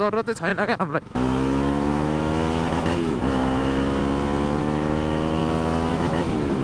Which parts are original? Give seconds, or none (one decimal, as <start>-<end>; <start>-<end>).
4.0-4.6; 5.4-5.9